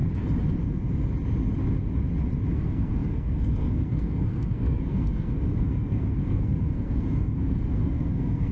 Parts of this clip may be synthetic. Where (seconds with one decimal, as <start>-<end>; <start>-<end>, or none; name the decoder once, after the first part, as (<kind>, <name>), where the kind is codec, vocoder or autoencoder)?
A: 2.5-8.5 (codec, SNAC)